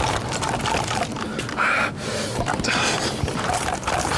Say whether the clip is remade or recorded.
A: recorded